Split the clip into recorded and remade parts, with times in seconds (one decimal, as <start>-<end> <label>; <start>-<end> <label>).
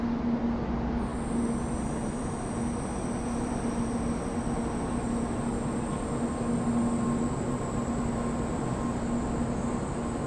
0.0-10.3 recorded